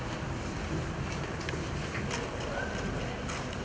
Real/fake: real